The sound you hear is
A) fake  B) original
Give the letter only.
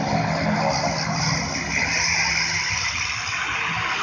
B